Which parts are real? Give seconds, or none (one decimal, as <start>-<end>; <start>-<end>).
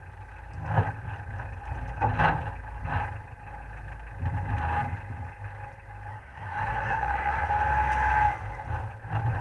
0.0-6.1; 7.5-9.4